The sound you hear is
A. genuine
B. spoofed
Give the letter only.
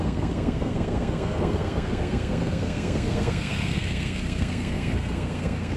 B